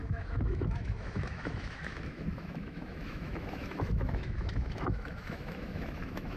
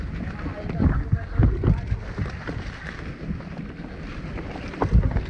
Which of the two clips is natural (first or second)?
second